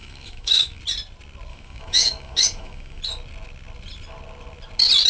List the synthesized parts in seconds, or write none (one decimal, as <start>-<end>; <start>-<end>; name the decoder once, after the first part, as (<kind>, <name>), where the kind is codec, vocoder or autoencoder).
0.0-0.8 (autoencoder, DAC-VAE); 1.5-3.0